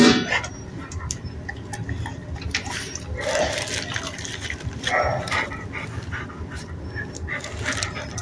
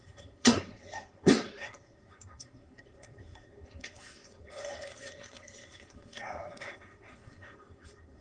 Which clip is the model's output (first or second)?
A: second